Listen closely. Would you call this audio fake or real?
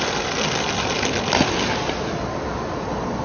real